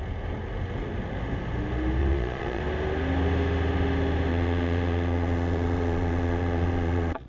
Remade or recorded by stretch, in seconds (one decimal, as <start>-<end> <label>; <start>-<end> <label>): 0.0-2.0 recorded; 2.0-2.6 remade; 2.6-4.3 recorded; 4.3-7.3 remade